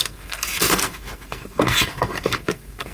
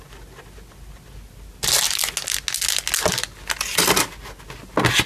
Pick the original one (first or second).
second